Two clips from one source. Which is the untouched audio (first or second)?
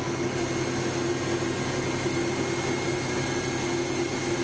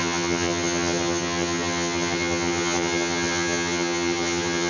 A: first